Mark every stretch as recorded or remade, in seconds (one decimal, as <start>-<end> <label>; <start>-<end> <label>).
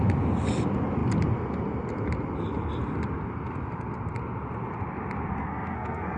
0.0-5.4 recorded; 5.4-6.2 remade